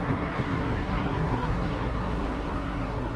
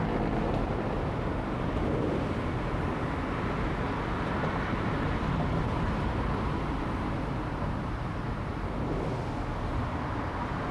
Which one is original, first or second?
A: second